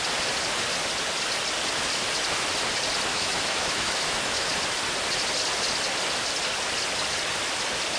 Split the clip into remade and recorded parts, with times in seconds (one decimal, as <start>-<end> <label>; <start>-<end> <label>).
0.0-3.1 recorded; 3.1-4.5 remade; 4.5-8.0 recorded